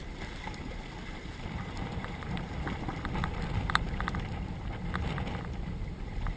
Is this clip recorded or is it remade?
remade